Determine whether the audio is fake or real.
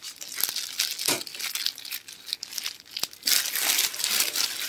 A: real